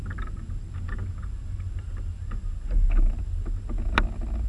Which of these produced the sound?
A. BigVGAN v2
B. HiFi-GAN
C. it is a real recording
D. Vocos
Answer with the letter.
C